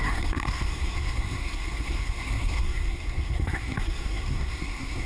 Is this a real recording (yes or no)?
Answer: no